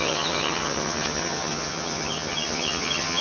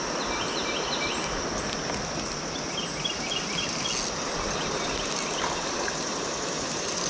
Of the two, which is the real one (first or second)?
second